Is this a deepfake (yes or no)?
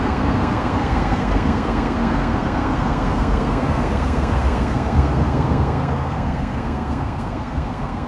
yes